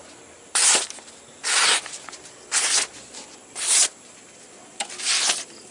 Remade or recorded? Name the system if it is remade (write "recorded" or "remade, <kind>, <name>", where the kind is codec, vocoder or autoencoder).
recorded